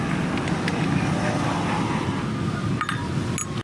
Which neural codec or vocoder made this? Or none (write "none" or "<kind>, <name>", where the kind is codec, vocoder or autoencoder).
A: none